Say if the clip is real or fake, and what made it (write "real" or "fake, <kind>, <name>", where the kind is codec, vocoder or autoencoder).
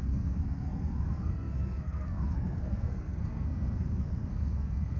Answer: fake, codec, SNAC